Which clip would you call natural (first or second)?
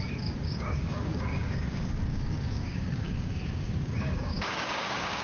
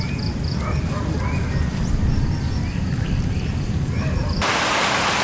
second